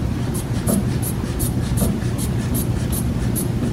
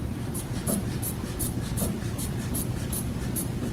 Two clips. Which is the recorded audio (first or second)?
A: first